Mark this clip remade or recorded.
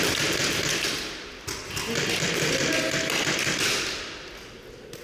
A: recorded